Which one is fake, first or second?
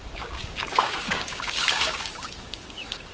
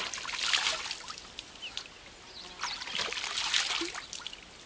first